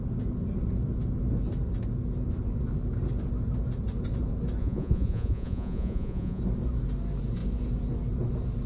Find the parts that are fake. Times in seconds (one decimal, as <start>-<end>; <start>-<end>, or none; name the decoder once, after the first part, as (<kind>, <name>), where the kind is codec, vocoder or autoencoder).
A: 4.6-6.4 (vocoder, Vocos)